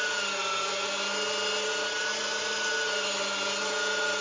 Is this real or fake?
real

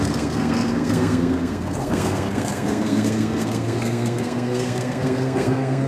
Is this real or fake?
fake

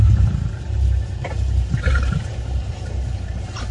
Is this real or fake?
fake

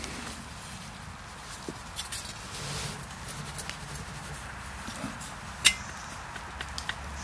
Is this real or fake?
real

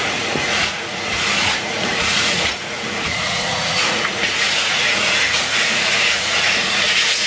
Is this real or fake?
fake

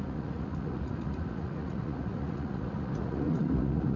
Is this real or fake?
fake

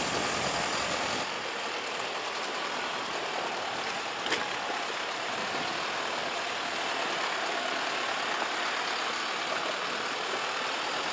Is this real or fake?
real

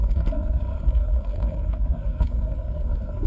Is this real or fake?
fake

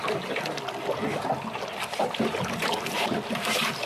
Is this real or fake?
real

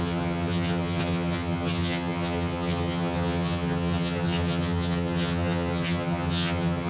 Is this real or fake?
fake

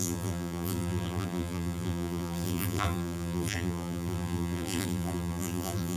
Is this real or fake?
fake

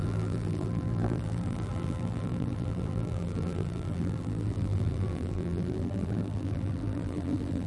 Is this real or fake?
fake